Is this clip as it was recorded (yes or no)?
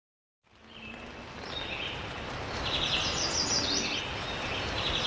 yes